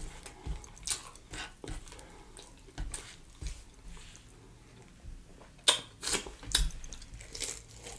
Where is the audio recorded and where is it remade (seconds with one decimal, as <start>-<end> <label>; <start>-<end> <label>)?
0.0-8.0 recorded